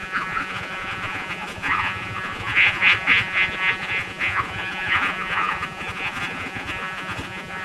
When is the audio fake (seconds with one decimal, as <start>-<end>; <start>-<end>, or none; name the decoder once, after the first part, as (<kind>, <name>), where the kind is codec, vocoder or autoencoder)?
0.0-7.6 (vocoder, Vocos)